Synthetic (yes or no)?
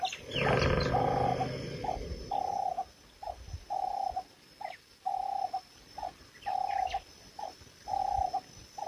no